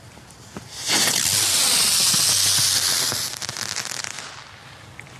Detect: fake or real real